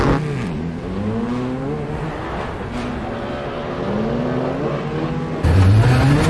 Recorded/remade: recorded